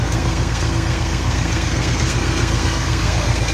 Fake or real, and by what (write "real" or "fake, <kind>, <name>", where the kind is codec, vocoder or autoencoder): fake, codec, SNAC